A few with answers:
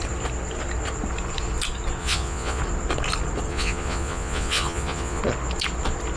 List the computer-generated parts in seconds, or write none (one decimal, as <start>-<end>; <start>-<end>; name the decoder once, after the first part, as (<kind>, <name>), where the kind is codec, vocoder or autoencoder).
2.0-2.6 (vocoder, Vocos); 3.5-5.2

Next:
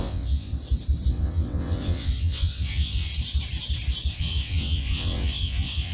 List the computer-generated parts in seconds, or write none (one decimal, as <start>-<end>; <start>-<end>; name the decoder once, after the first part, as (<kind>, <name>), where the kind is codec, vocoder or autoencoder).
0.0-0.5 (vocoder, WaveNeXt); 1.1-3.1; 4.2-5.9

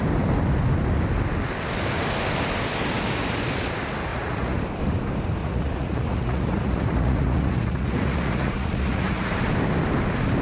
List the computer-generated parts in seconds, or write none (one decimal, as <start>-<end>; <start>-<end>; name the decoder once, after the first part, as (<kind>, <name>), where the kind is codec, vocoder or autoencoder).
4.1-4.6 (vocoder, Vocos); 5.4-9.3